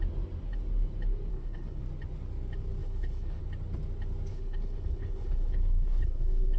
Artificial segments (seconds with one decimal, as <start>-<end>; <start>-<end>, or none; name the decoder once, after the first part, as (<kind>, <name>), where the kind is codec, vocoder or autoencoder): 1.3-1.8 (codec, HILCodec); 2.8-3.4; 4.3-6.6